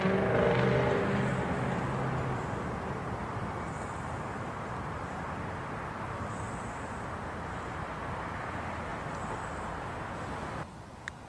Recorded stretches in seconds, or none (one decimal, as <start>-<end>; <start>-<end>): 0.0-3.2; 4.7-8.9; 9.5-11.3